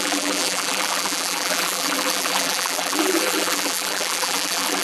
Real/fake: fake